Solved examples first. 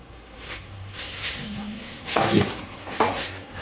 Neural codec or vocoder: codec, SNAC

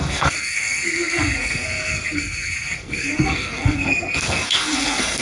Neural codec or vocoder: codec, SNAC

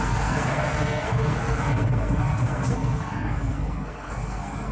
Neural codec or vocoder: codec, SNAC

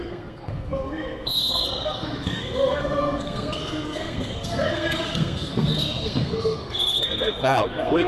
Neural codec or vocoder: codec, SNAC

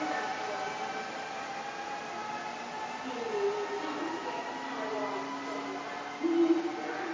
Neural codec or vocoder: none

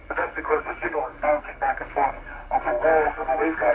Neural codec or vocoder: codec, SNAC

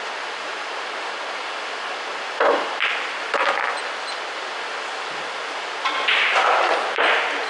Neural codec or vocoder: none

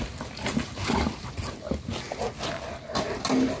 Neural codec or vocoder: none